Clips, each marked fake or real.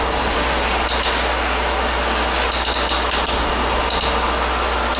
real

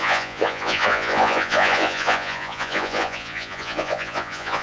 fake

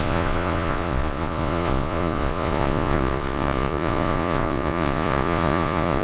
fake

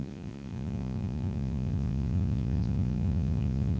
fake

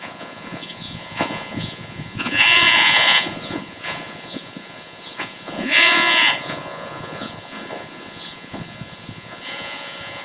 fake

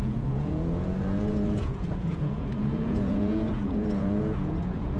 fake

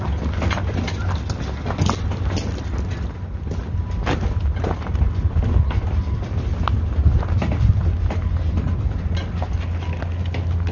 real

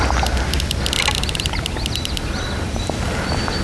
real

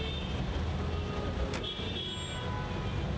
real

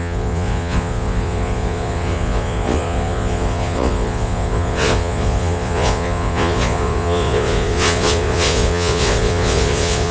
fake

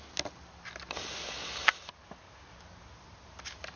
real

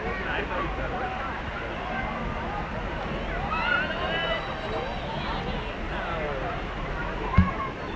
real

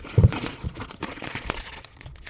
fake